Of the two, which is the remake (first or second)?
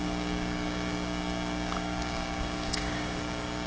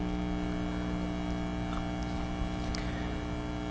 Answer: first